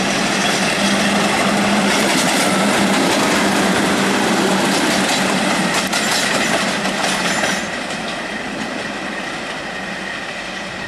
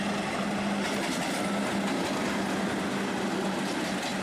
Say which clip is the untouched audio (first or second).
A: second